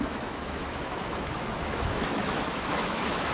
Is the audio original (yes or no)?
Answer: no